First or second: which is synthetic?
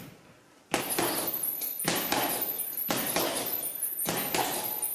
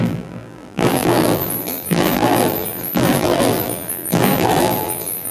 second